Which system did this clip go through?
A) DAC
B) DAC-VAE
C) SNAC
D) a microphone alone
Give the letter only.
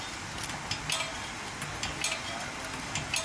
D